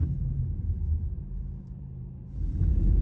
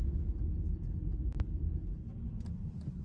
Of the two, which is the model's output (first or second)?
first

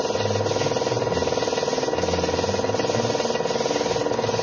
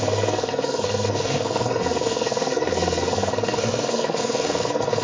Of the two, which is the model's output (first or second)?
second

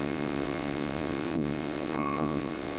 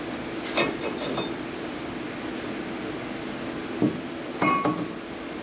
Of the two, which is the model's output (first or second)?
first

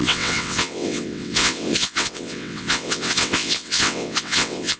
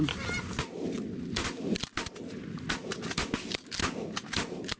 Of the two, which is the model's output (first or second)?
first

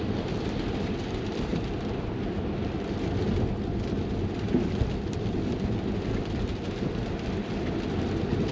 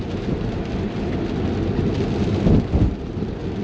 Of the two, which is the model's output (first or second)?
first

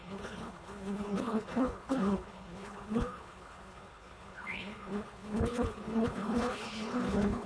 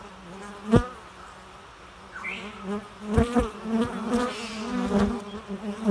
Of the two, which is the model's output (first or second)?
first